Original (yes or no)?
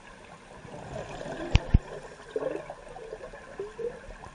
yes